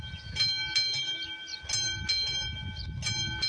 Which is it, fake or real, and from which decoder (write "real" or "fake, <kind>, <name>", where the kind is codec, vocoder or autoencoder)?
real